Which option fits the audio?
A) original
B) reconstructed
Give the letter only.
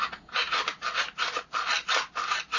A